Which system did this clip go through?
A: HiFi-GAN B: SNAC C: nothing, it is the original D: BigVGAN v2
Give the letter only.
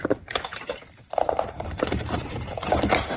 D